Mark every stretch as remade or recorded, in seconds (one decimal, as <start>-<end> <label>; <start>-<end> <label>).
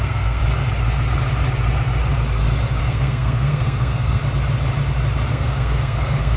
0.0-0.4 remade; 0.4-2.8 recorded; 2.8-4.2 remade; 4.2-5.3 recorded; 5.3-6.4 remade